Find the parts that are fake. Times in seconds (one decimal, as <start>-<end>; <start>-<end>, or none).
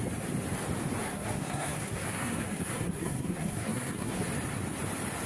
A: 1.0-4.2